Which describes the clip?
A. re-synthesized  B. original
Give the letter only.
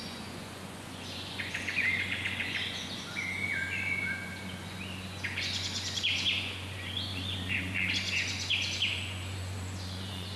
A